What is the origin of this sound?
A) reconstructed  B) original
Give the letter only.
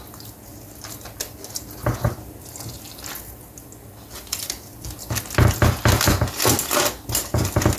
B